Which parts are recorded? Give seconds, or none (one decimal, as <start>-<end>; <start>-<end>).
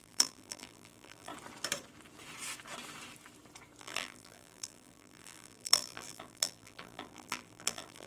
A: 1.3-3.8